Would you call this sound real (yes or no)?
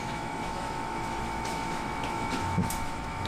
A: no